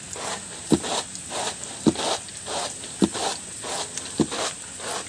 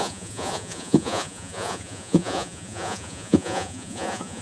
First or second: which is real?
first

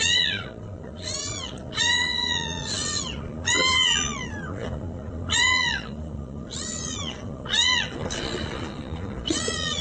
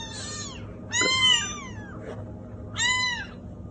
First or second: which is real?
second